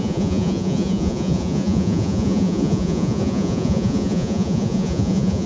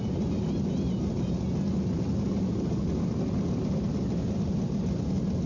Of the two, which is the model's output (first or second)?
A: first